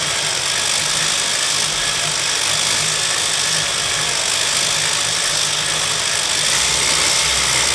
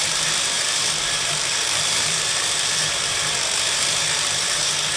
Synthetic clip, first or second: second